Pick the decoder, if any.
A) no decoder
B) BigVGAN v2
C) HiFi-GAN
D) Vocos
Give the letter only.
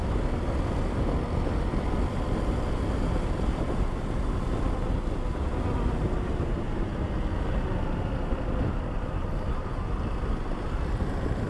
A